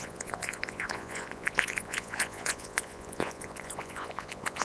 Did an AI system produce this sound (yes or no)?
yes